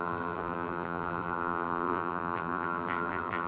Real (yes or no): no